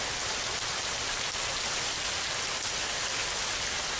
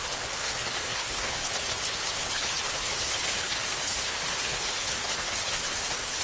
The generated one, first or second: second